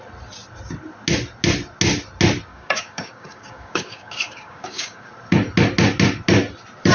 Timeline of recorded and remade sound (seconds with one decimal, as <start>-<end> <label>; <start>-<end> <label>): 0.0-2.5 recorded; 2.5-5.1 remade; 5.1-6.9 recorded

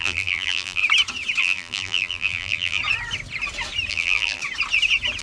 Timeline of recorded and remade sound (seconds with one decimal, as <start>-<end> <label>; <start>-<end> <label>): 0.0-0.8 remade; 0.8-1.4 recorded; 1.4-2.8 remade; 2.8-3.9 recorded; 3.9-4.4 remade; 4.4-5.2 recorded

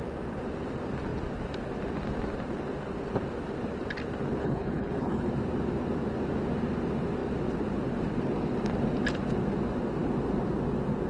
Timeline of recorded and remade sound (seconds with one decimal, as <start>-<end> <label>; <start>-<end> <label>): 0.0-4.4 recorded; 4.4-5.3 remade; 5.3-11.1 recorded

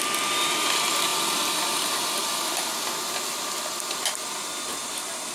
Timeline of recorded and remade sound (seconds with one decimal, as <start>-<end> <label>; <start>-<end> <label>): 0.0-5.3 recorded